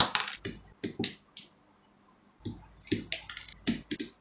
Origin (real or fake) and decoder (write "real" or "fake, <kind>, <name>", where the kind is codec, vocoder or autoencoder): real